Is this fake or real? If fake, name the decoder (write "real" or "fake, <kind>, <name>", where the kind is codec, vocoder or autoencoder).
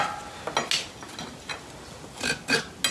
real